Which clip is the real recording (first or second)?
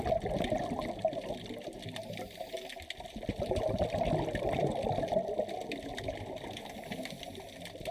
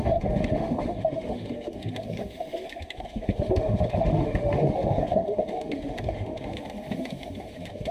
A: first